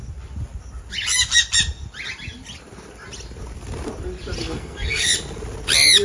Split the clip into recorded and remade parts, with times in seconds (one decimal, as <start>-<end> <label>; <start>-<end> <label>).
0.0-4.4 recorded; 4.4-5.1 remade; 5.1-6.0 recorded